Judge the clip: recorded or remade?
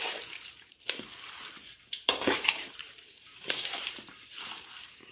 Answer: remade